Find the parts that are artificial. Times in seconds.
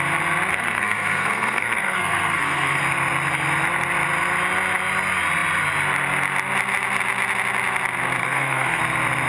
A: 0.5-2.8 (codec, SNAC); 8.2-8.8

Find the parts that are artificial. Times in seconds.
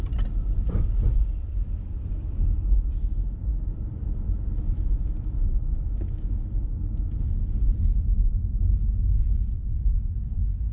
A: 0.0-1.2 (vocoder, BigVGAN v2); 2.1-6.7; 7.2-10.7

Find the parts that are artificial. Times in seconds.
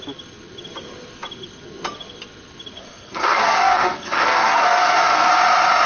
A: 2.8-5.3 (codec, SNAC)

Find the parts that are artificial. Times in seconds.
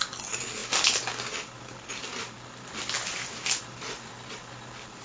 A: none